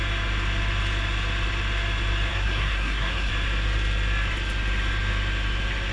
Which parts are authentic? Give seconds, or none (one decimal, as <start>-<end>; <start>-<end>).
0.0-2.3; 3.3-5.9